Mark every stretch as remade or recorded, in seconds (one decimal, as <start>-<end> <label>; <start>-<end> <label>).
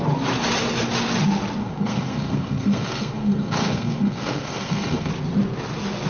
0.0-1.6 recorded; 1.6-5.1 remade; 5.1-6.1 recorded